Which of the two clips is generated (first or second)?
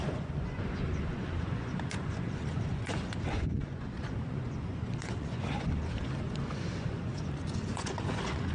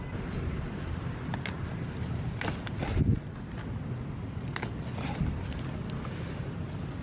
first